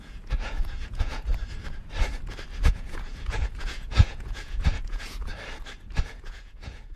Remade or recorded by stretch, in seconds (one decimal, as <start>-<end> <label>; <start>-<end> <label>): 0.0-1.3 remade; 1.3-2.6 recorded; 2.6-5.3 remade; 5.3-6.0 recorded; 6.0-7.0 remade